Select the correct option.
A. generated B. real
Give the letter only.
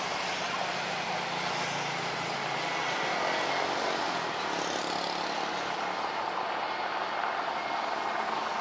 B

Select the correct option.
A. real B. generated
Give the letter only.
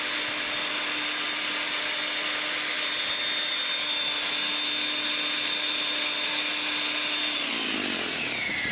A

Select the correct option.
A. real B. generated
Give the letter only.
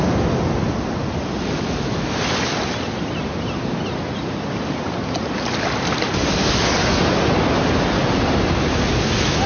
A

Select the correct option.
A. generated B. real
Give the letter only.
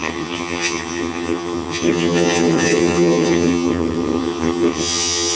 A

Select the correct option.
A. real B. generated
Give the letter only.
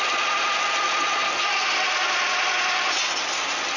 A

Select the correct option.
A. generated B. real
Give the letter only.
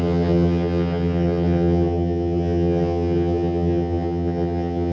A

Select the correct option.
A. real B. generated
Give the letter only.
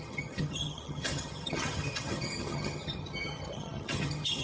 B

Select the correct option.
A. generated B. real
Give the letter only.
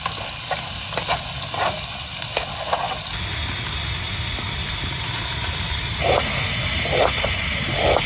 B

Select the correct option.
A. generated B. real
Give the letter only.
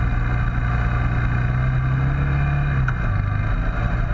B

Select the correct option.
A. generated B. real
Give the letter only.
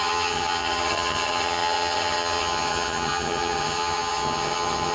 A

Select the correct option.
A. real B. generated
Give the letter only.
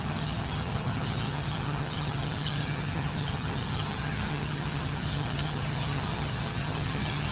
B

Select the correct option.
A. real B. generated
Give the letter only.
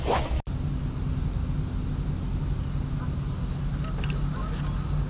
A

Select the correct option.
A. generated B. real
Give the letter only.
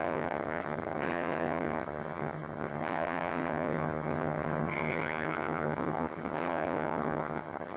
A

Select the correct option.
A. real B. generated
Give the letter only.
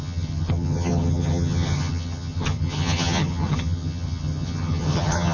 B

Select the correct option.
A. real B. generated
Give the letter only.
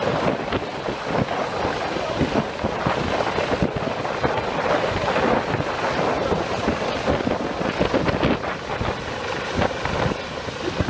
A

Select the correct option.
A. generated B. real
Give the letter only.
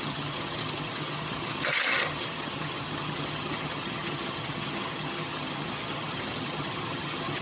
A